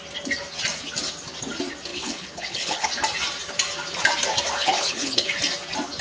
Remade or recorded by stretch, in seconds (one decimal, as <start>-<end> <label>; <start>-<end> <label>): 0.0-1.9 recorded; 1.9-2.9 remade; 2.9-4.6 recorded; 4.6-5.3 remade; 5.3-6.0 recorded